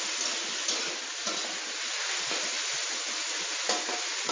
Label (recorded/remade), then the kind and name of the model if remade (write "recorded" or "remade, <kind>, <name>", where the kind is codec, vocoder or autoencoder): recorded